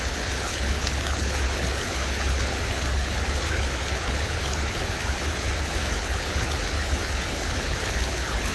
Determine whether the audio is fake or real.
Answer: fake